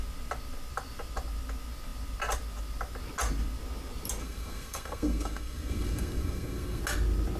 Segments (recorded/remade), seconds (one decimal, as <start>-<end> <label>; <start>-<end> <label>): 0.0-4.2 recorded; 4.2-6.8 remade; 6.8-7.4 recorded